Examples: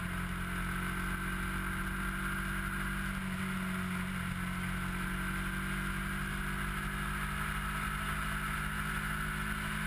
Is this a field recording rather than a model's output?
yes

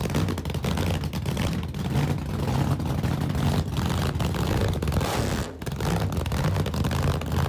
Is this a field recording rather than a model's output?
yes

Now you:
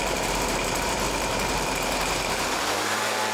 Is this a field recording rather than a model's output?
no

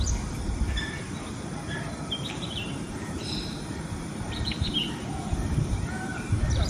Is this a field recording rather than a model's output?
no